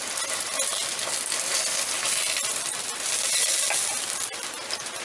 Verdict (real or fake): real